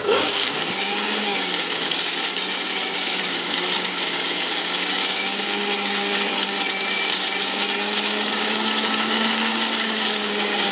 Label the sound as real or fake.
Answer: fake